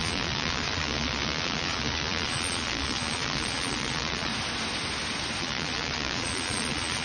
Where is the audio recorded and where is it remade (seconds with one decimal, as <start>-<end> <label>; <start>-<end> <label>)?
0.0-4.3 remade; 4.3-5.4 recorded; 5.4-7.0 remade